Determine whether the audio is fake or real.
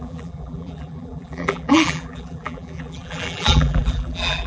fake